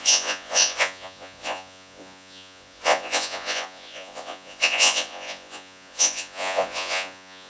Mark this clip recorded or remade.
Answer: remade